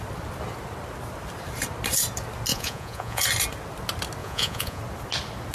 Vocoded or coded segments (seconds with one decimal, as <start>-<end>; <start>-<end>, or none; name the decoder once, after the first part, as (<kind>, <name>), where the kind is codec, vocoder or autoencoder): 2.5-3.2 (vocoder, Vocos); 4.2-4.8